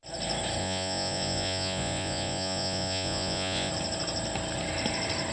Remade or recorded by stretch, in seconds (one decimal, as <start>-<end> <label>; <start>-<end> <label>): 0.0-0.6 recorded; 0.6-3.7 remade; 3.7-5.3 recorded